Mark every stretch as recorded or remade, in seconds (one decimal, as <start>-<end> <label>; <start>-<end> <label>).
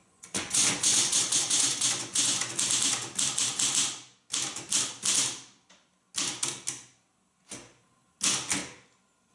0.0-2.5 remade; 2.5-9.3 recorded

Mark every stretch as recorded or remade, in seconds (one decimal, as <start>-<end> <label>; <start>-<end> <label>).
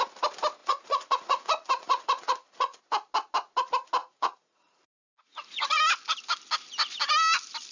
0.0-0.6 recorded; 0.6-2.8 remade; 2.8-4.0 recorded; 4.0-5.8 remade; 5.8-7.7 recorded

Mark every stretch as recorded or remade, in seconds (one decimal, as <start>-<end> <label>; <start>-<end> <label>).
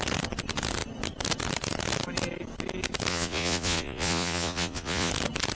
0.0-3.1 recorded; 3.1-5.1 remade; 5.1-5.6 recorded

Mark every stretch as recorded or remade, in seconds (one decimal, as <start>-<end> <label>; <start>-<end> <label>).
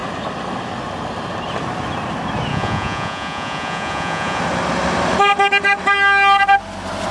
0.0-2.5 recorded; 2.5-4.4 remade; 4.4-7.1 recorded